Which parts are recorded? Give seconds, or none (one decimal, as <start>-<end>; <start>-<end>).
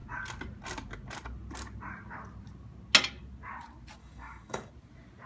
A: 0.0-4.0; 4.7-5.3